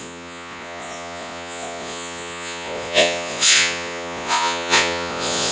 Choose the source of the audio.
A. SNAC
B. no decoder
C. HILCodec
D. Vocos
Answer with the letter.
D